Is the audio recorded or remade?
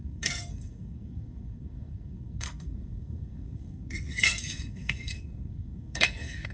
remade